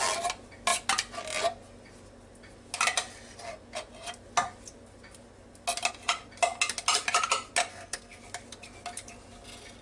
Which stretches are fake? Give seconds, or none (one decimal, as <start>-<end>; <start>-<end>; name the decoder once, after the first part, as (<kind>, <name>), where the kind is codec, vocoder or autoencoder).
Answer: 7.7-8.2 (codec, SNAC)